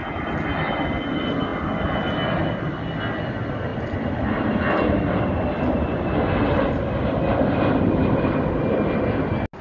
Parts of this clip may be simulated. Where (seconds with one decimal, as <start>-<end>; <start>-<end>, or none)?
0.0-0.8; 1.5-2.8; 3.7-7.8